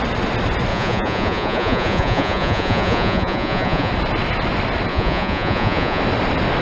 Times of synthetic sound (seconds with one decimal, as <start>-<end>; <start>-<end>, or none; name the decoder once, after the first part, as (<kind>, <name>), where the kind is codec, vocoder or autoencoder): 0.7-3.9 (vocoder, Vocos); 4.9-6.0